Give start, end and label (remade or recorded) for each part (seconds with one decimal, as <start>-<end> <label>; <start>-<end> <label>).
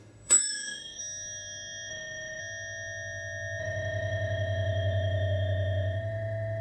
0.0-1.0 remade; 1.0-1.9 recorded; 1.9-2.4 remade; 2.4-3.6 recorded; 3.6-6.6 remade